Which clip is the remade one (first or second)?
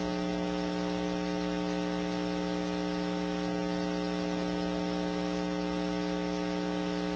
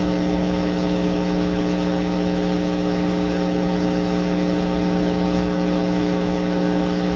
second